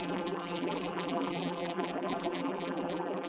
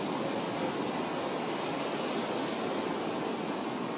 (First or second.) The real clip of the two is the second